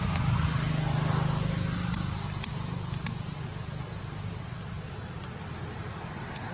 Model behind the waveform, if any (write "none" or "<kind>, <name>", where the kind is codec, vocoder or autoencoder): none